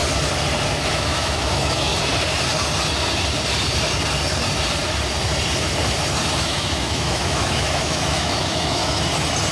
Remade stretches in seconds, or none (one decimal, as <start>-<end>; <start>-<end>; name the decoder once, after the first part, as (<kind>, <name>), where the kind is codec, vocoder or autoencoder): 0.9-1.9 (autoencoder, DAC-VAE); 6.4-8.8